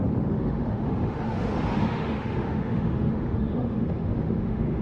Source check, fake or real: fake